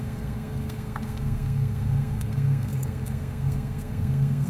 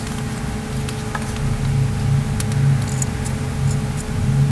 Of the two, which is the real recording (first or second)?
second